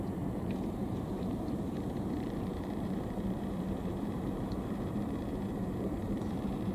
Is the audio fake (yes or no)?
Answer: yes